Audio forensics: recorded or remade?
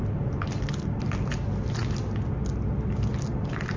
recorded